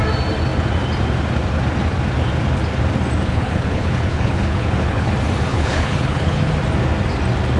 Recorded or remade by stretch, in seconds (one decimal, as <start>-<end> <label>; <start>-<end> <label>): 0.0-3.3 recorded; 3.3-5.1 remade; 5.1-5.5 recorded; 5.5-6.5 remade; 6.5-7.6 recorded